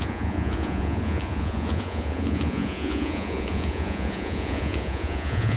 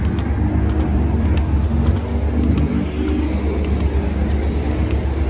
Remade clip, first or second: first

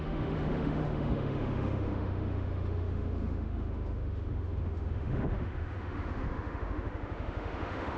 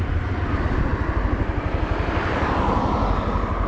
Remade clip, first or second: first